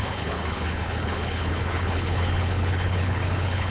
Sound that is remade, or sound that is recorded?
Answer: remade